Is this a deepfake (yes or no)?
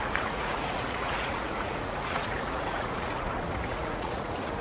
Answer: yes